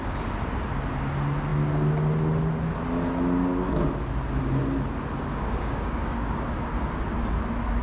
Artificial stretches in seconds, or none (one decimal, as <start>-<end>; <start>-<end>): 5.3-6.6